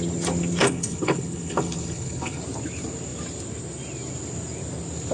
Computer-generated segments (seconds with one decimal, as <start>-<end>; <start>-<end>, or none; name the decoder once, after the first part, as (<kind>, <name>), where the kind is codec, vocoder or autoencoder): 0.6-2.4 (codec, HILCodec)